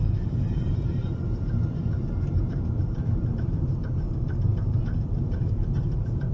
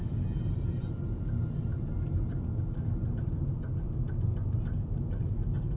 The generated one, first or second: first